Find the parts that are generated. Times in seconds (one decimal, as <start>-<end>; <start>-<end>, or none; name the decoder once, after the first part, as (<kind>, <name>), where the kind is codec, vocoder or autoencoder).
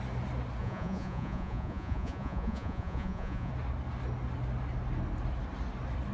0.6-3.5 (vocoder, Vocos)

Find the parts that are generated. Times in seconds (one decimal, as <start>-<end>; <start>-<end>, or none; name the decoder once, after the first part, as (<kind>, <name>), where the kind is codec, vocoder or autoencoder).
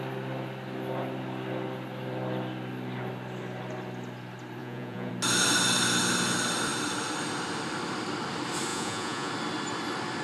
4.6-5.1 (vocoder, Vocos); 8.7-9.3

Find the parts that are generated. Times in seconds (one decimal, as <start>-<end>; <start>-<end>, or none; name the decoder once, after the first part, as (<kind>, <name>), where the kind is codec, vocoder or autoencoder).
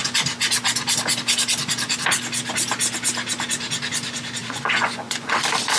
4.4-5.3 (vocoder, Vocos)